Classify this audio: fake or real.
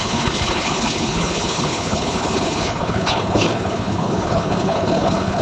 fake